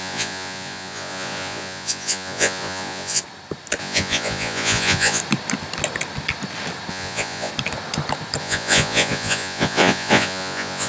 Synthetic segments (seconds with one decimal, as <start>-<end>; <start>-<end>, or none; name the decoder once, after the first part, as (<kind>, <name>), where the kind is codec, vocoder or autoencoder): 0.0-3.2 (vocoder, Vocos); 3.8-5.2; 6.9-7.5; 8.4-10.9